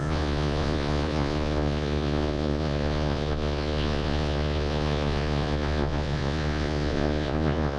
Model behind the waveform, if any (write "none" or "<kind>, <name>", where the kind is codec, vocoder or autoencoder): vocoder, Vocos